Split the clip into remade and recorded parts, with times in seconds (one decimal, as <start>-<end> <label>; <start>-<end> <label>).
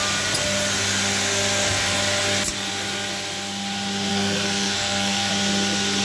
0.0-4.1 recorded; 4.1-5.3 remade; 5.3-6.0 recorded